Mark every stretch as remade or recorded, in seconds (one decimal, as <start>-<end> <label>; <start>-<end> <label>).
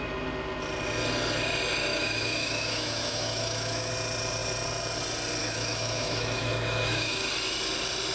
0.0-1.9 recorded; 1.9-3.9 remade; 3.9-5.4 recorded; 5.4-7.3 remade; 7.3-8.1 recorded